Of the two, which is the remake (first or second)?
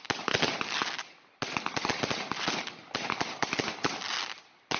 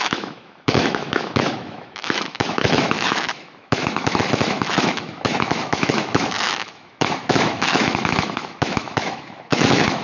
second